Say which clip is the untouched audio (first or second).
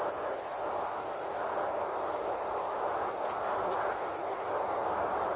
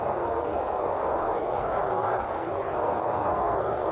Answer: first